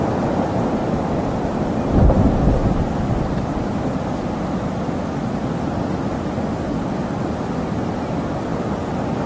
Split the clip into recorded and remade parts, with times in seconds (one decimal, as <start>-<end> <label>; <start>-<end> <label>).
0.0-9.3 remade